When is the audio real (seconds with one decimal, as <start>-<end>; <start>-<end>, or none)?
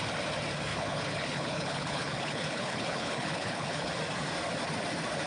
0.0-0.7; 3.9-5.3